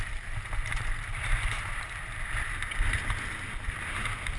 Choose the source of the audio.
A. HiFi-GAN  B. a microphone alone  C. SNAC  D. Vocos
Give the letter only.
B